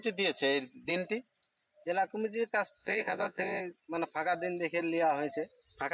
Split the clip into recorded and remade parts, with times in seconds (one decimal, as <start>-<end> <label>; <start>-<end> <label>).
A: 0.0-2.8 recorded; 2.8-3.6 remade; 3.6-5.9 recorded